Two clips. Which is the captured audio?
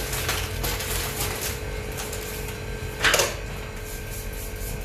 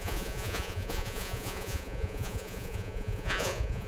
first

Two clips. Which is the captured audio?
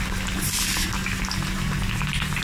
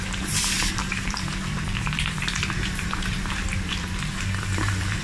first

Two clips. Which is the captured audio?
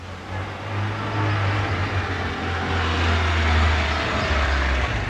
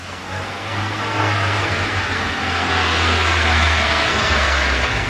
first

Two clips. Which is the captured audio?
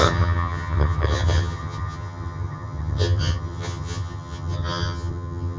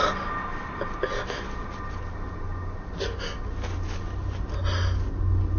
second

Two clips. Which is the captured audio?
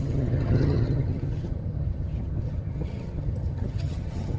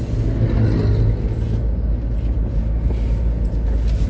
second